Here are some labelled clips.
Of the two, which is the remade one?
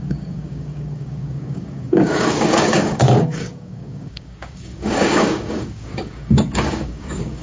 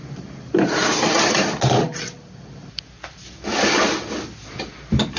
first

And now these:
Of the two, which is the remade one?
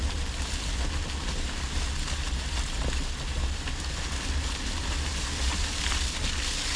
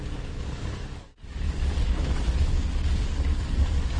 second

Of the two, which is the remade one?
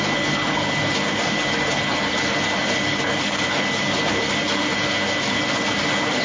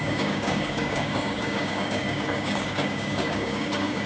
second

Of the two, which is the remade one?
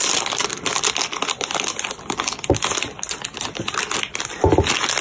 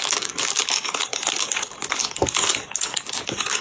second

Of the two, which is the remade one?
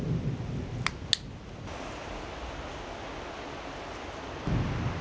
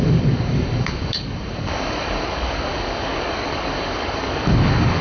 second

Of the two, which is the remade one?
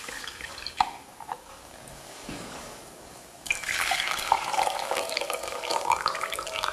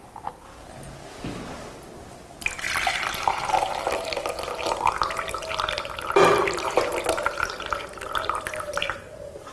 first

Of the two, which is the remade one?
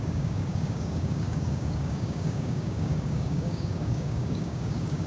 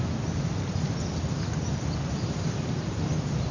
first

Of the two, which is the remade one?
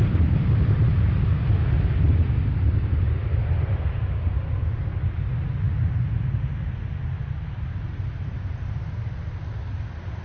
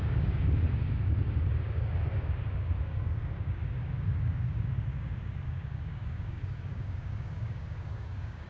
second